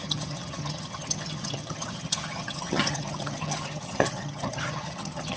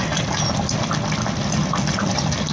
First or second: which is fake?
first